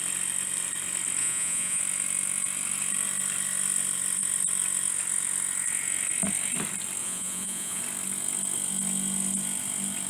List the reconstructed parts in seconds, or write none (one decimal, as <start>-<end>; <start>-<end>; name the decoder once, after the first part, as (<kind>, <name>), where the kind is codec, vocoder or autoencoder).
1.2-1.8 (vocoder, Vocos); 7.0-7.8